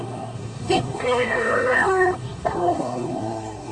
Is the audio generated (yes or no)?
yes